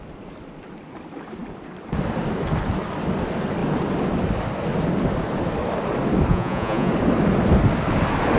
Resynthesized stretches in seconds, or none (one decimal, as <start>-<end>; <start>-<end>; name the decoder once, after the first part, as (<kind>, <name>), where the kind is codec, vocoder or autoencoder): 6.3-6.9 (vocoder, Vocos)